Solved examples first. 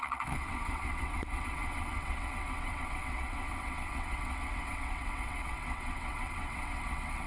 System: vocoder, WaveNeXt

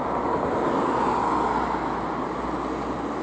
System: none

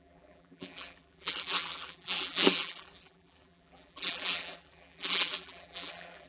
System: vocoder, BigVGAN v2